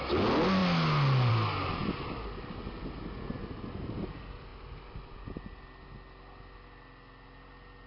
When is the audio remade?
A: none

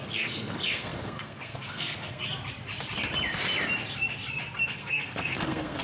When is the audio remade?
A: 0.0-2.2 (codec, SNAC); 4.6-5.8

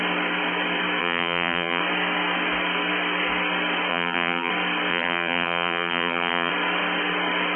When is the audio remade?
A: 1.0-1.8 (vocoder, BigVGAN v2); 3.9-4.5; 4.9-6.5

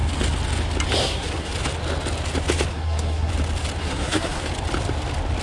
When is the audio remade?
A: 1.0-1.5 (codec, SNAC); 2.7-3.3; 3.8-4.4

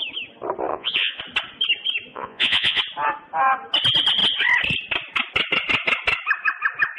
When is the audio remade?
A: 0.7-1.2 (vocoder, Vocos); 2.1-2.8

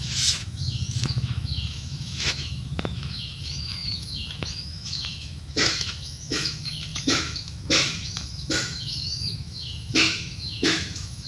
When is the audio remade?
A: 0.0-11.3 (autoencoder, DAC-VAE)

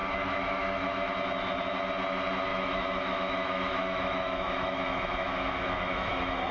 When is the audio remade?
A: 0.0-1.1 (autoencoder, DAC-VAE); 2.5-6.5